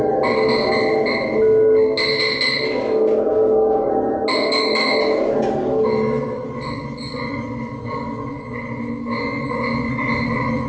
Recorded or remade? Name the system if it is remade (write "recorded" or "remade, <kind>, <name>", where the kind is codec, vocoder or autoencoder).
recorded